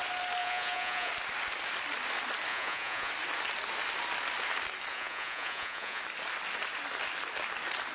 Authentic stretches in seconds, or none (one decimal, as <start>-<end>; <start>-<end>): 0.0-0.4; 1.1-2.5; 3.1-4.9; 6.0-7.9